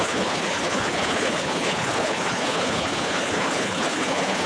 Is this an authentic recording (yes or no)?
no